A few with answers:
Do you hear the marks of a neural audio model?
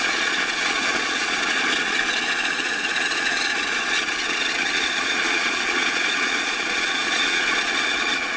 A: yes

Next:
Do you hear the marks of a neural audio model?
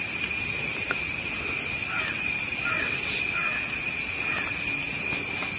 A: no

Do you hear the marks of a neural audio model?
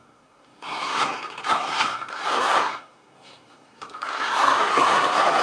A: yes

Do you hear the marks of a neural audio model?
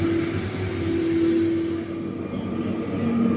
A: no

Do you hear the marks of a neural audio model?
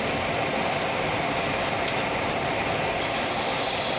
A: no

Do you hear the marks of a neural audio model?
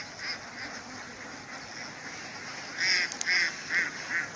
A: no